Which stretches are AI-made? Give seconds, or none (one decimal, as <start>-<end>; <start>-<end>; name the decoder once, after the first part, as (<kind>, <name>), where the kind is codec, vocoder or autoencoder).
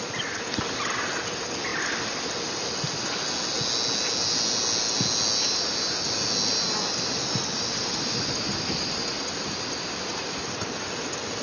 none